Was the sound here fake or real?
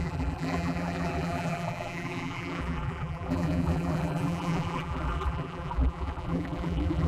fake